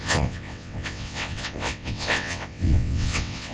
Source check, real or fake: fake